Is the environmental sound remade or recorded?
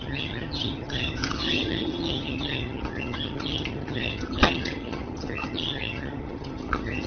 remade